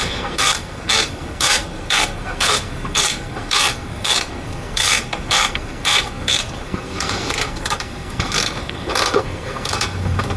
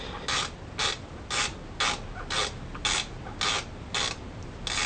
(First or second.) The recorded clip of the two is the second